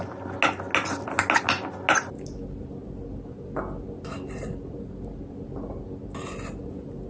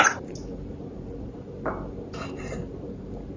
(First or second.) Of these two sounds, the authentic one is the first